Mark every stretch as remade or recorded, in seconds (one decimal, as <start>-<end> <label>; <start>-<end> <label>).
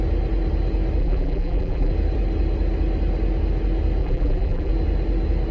0.0-1.0 recorded; 1.0-1.9 remade; 1.9-4.0 recorded; 4.0-4.7 remade; 4.7-5.5 recorded